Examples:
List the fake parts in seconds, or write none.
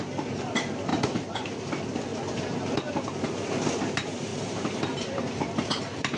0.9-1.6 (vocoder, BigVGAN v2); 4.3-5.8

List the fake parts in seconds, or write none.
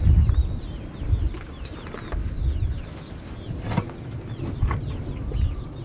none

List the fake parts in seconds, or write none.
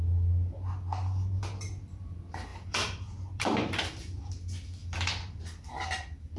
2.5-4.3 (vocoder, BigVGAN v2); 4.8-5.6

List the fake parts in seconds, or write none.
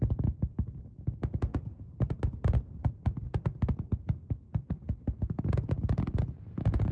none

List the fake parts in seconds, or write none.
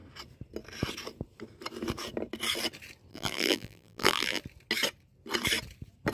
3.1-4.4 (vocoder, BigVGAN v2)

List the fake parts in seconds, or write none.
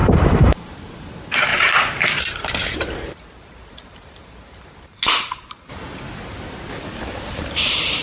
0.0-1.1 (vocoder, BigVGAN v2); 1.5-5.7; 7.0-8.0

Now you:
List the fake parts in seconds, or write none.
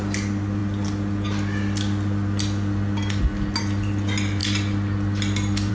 none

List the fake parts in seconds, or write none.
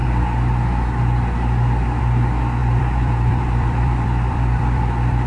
2.6-5.3 (vocoder, BigVGAN v2)